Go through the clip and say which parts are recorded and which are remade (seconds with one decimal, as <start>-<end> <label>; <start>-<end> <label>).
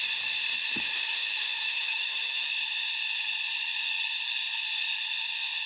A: 0.0-0.6 recorded; 0.6-2.4 remade; 2.4-5.7 recorded